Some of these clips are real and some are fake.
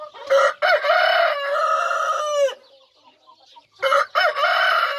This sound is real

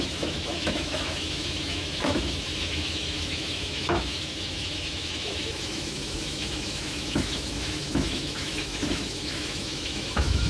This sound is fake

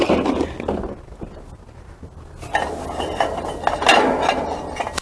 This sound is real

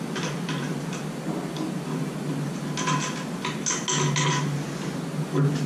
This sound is real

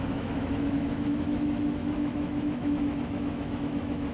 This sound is fake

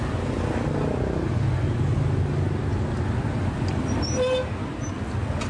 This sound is real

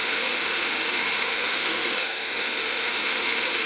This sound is fake